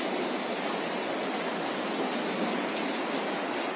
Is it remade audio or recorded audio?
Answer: recorded